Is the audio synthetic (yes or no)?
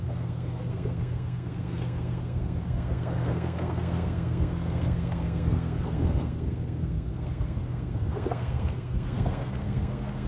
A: yes